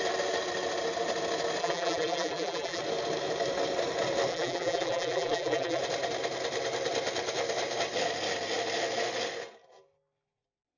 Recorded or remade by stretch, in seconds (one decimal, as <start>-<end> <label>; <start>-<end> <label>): 0.0-1.6 recorded; 1.6-2.8 remade; 2.8-4.3 recorded; 4.3-5.8 remade; 5.8-10.8 recorded